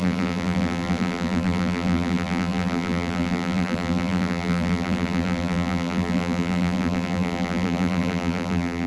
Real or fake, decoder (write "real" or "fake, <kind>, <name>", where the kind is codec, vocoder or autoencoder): fake, vocoder, BigVGAN v2